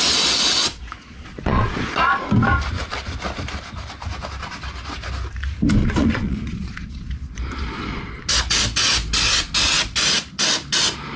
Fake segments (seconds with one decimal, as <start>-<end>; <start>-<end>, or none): 0.6-2.2; 5.8-8.2